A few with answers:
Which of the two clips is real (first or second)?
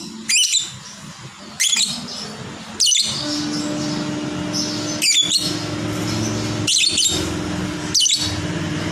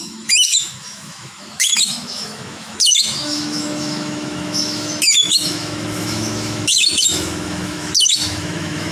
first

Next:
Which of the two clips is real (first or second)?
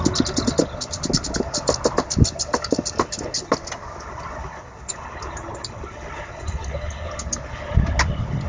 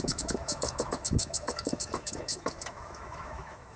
first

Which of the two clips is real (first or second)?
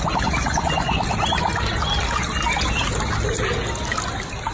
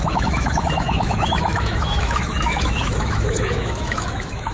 first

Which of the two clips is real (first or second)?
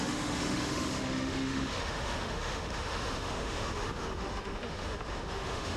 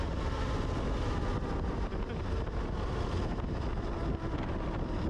second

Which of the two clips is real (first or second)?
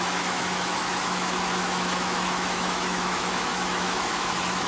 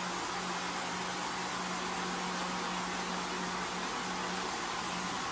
second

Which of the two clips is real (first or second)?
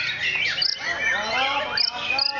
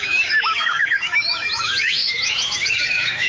first